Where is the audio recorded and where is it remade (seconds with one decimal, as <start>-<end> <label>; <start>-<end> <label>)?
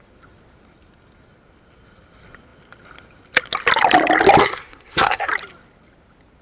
0.0-4.4 recorded; 4.4-5.3 remade; 5.3-6.4 recorded